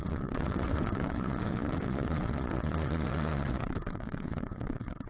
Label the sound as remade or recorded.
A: remade